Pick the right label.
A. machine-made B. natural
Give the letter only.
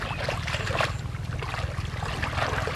B